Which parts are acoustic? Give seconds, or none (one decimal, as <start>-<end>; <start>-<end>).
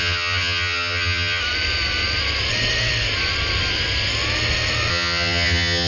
1.4-4.9